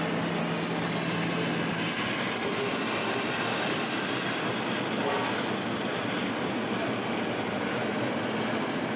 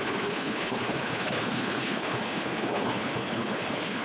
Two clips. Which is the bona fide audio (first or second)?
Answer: first